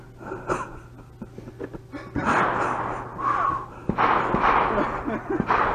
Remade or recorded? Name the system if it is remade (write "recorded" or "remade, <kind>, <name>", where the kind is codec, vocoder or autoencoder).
recorded